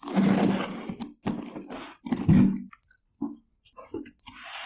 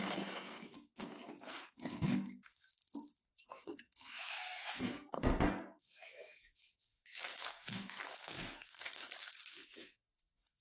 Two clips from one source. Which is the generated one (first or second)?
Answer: second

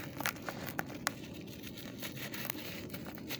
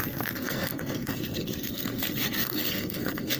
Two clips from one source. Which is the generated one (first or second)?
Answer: second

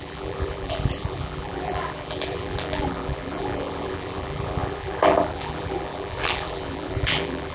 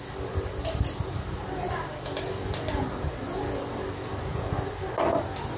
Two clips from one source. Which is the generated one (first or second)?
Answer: first